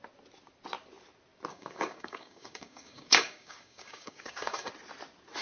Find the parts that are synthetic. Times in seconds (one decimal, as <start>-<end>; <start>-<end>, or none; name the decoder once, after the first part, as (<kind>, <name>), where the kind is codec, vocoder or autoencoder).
1.5-4.7 (codec, DAC)